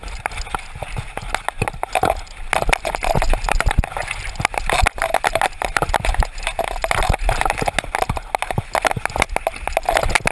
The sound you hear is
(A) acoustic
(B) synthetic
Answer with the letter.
A